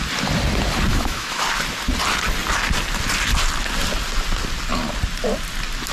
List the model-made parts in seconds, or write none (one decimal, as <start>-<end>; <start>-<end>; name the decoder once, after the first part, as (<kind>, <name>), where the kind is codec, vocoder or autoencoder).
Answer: 0.9-1.4 (autoencoder, DAC-VAE)